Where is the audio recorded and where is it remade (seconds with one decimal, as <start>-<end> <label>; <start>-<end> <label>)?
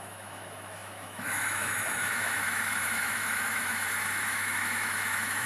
0.0-5.5 remade